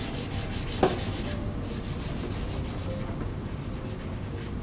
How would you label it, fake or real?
real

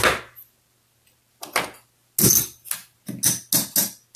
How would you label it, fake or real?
real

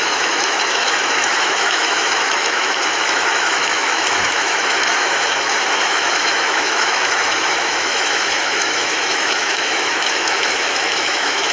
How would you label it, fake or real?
fake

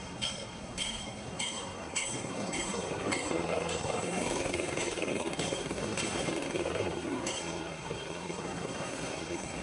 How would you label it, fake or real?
fake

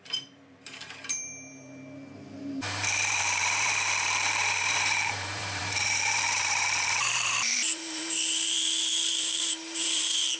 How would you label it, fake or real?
fake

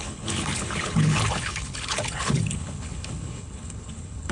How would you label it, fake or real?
fake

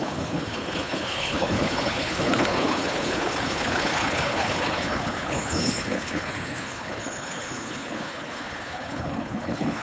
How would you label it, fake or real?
fake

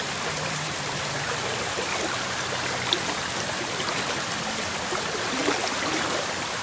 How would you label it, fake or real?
fake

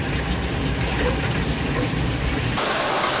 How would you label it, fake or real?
real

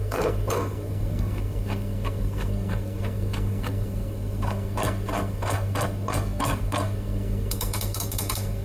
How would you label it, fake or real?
fake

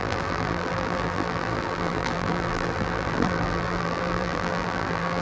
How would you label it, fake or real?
fake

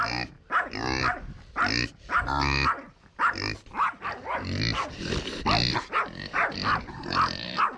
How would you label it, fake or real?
real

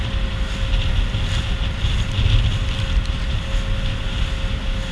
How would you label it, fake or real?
real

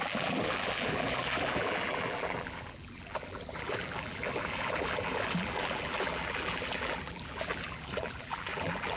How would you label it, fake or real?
fake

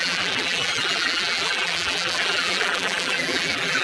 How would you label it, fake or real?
fake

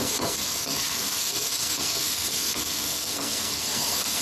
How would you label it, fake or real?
fake